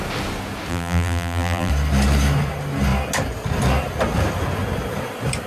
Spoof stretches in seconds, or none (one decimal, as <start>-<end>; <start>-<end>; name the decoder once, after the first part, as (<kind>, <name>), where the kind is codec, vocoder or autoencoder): 0.7-1.7 (vocoder, BigVGAN v2)